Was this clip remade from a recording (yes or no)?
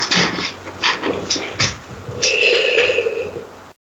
no